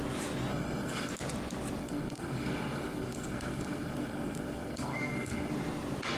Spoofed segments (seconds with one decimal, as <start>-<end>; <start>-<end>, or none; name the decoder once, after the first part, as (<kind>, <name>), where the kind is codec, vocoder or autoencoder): 0.5-1.1 (codec, SNAC); 1.8-5.5